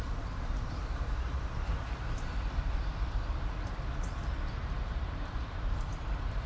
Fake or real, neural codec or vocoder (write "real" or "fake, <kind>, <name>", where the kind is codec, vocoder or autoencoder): fake, vocoder, BigVGAN v2